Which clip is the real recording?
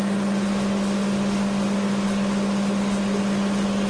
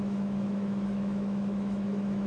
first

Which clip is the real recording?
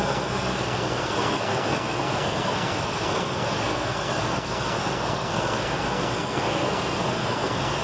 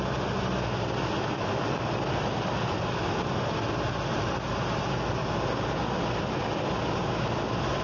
second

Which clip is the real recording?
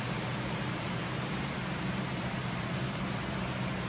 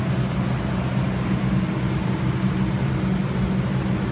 second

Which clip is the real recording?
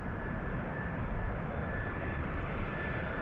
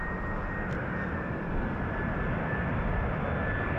second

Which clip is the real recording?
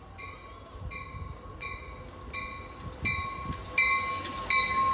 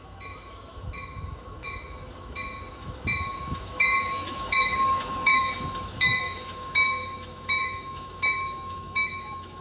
first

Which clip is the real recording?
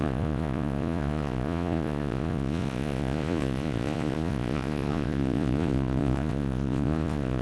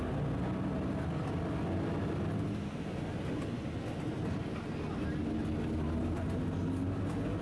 second